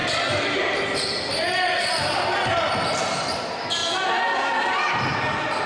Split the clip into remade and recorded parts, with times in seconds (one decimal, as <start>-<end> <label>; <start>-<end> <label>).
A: 0.0-3.4 remade; 3.4-5.7 recorded